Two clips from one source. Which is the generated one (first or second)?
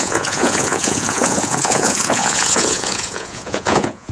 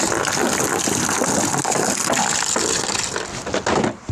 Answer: first